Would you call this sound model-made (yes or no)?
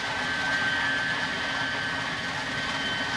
no